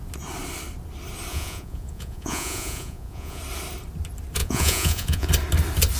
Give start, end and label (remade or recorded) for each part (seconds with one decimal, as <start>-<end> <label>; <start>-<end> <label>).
0.0-1.3 recorded; 1.3-3.4 remade; 3.4-4.4 recorded; 4.4-5.3 remade; 5.3-6.0 recorded